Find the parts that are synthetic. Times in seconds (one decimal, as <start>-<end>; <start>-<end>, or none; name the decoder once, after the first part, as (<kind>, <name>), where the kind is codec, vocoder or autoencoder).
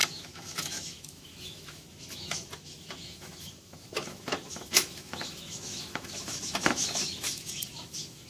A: 0.0-8.3 (autoencoder, DAC-VAE)